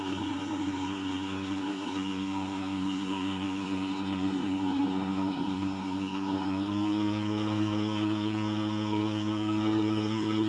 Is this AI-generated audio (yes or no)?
yes